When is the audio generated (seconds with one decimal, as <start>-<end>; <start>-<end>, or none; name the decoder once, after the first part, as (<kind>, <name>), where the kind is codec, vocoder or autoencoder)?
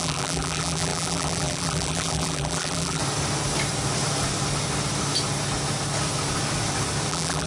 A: 0.0-3.0 (vocoder, BigVGAN v2); 7.1-7.5